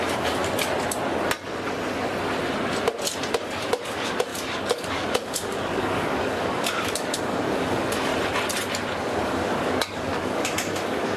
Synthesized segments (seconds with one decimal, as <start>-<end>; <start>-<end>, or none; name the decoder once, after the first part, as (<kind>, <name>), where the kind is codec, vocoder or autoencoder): 0.0-0.4 (codec, DAC); 3.8-8.1; 9.0-11.2